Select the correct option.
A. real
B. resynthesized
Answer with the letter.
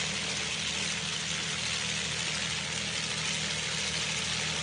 A